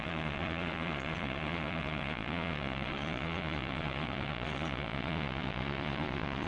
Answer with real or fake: fake